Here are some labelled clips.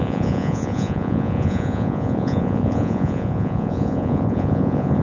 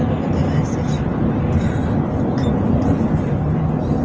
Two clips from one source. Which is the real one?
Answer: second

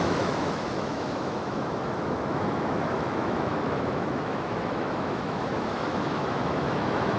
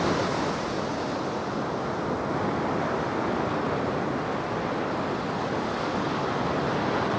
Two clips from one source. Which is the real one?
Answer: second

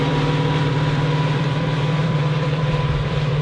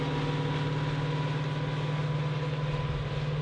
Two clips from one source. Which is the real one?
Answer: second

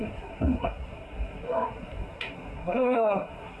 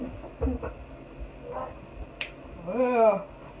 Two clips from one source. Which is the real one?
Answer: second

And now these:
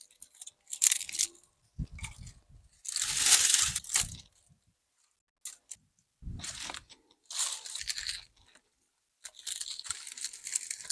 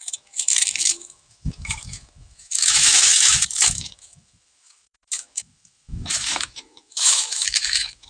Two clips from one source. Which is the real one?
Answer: first